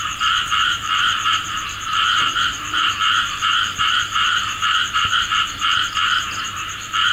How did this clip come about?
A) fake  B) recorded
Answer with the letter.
A